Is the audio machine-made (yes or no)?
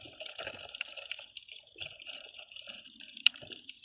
yes